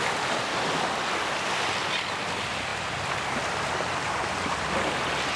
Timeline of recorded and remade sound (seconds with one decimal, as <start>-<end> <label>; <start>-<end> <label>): 0.0-5.4 recorded